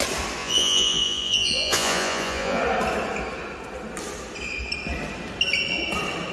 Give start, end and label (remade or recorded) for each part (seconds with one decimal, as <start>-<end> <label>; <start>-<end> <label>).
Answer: 0.0-0.4 recorded; 0.4-2.6 remade; 2.6-6.3 recorded